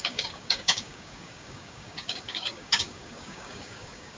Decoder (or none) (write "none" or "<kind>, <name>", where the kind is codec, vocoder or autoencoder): codec, DAC